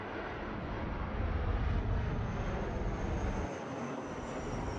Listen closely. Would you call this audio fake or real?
real